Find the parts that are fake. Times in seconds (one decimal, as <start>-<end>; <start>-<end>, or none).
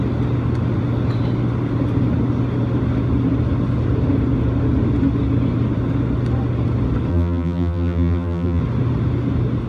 7.1-8.6